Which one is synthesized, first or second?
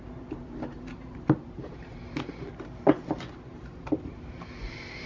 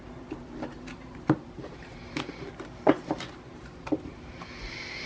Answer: second